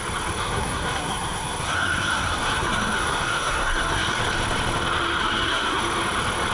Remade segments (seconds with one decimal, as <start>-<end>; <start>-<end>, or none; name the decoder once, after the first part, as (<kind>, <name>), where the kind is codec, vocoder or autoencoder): 0.4-4.2 (codec, SNAC); 5.2-5.8